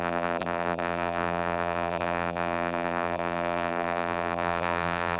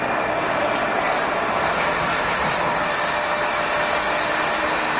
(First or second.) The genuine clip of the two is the second